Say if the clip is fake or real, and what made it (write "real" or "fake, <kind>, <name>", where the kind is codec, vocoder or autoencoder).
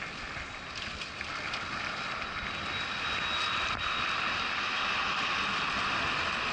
real